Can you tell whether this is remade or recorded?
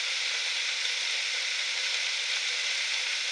recorded